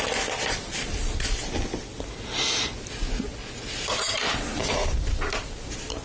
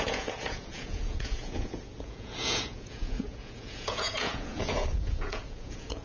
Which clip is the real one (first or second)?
first